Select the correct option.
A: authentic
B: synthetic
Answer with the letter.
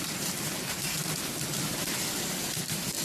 B